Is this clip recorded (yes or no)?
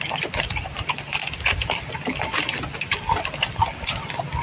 yes